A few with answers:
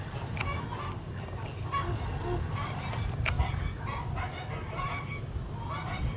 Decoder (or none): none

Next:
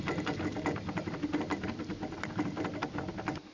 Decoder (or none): none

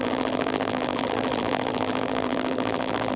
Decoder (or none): vocoder, BigVGAN v2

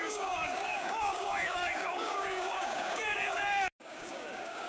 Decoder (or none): codec, DAC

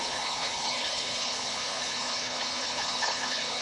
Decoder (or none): codec, HILCodec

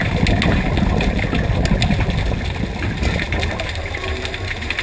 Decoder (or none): none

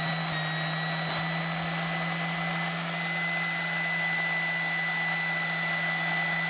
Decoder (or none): none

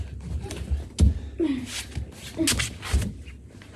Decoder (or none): none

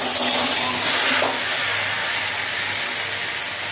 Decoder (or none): none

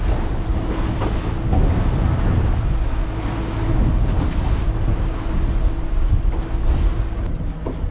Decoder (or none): none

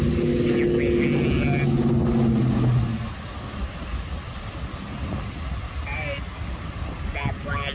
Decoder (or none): none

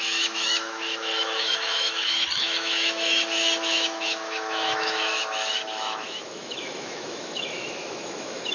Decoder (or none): autoencoder, DAC-VAE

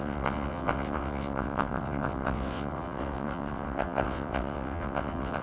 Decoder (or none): vocoder, WaveNeXt